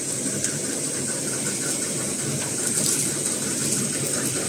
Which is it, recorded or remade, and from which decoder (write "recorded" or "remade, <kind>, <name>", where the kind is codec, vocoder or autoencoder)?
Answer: recorded